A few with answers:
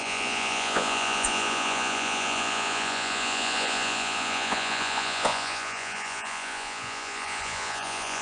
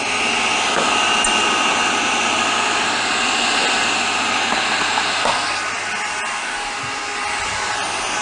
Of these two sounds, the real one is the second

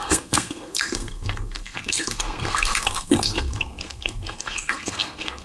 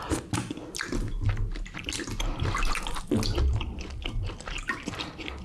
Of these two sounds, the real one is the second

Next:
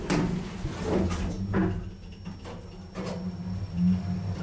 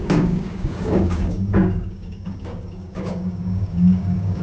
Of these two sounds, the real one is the first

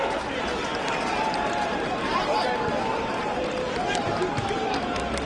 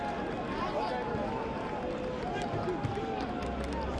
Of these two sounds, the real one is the second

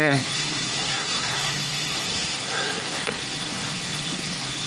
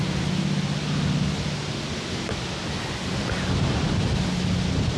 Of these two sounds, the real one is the second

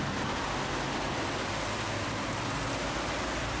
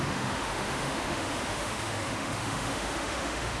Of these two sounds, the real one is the first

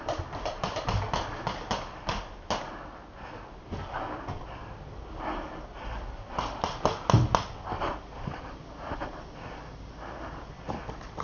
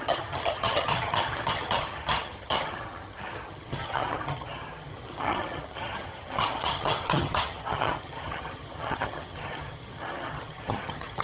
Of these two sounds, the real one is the first